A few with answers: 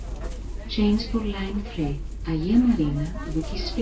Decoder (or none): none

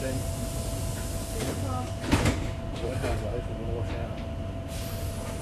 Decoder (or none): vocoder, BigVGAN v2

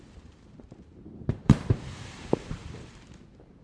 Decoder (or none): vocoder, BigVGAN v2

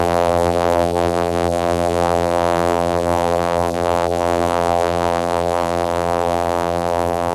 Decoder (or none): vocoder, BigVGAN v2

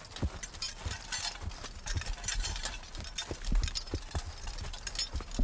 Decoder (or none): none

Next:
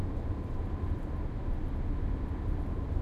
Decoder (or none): none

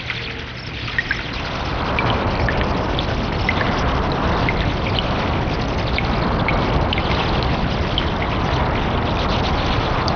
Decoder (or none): none